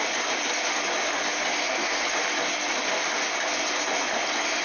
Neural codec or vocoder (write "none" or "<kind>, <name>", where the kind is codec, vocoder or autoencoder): none